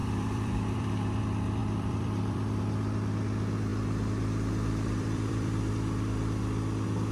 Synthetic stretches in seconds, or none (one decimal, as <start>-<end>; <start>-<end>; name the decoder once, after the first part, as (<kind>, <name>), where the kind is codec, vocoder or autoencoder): 0.0-1.2 (vocoder, BigVGAN v2); 1.6-2.6; 3.7-5.7